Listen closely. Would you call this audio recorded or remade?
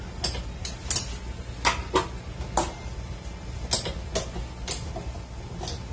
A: recorded